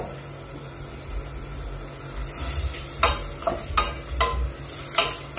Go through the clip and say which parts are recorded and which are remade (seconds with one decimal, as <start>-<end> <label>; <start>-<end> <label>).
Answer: 0.0-5.4 recorded